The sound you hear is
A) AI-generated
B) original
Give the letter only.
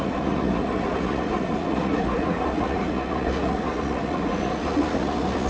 A